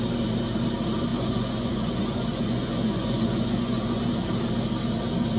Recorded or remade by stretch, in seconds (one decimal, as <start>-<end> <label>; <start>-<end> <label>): 0.0-1.1 recorded; 1.1-4.0 remade; 4.0-5.4 recorded